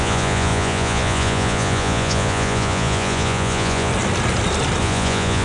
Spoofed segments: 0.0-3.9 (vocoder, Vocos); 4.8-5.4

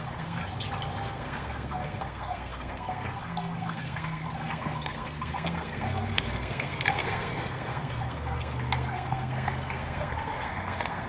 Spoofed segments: 0.0-0.4 (codec, SNAC); 1.0-11.1

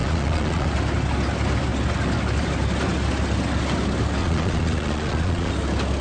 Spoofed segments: 0.0-0.7 (vocoder, Vocos); 4.2-5.5

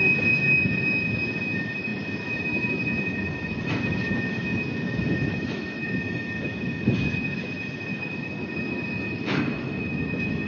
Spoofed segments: 0.0-10.5 (autoencoder, DAC-VAE)

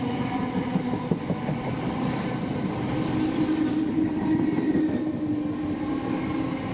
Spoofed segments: none

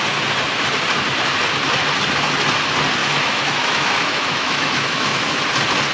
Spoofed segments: 3.0-5.5 (autoencoder, DAC-VAE)

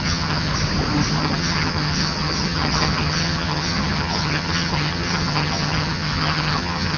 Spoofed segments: 0.0-0.5 (vocoder, HiFi-GAN); 1.2-7.0

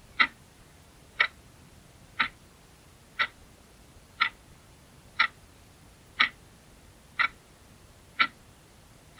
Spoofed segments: 0.0-9.2 (vocoder, BigVGAN v2)